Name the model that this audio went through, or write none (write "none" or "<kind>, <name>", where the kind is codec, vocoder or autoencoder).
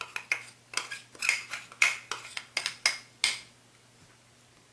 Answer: none